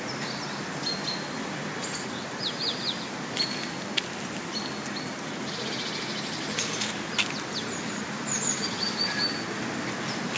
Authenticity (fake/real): real